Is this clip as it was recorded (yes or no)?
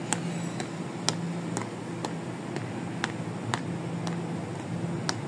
yes